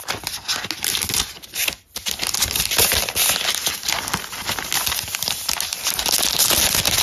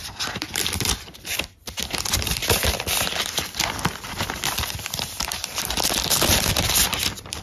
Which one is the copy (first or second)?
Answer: second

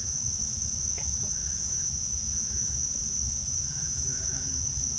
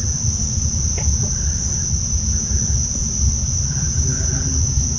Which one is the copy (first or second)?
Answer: first